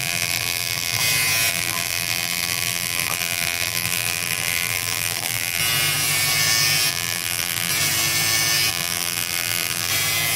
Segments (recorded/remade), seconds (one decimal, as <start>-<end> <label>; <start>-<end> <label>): 0.0-1.0 remade; 1.0-1.5 recorded; 1.5-5.6 remade; 5.6-6.9 recorded; 6.9-7.7 remade; 7.7-8.7 recorded; 8.7-9.9 remade; 9.9-10.4 recorded